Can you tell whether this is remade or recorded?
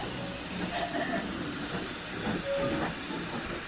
recorded